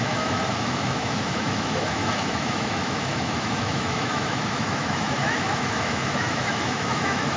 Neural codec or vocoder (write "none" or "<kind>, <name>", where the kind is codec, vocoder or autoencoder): autoencoder, DAC-VAE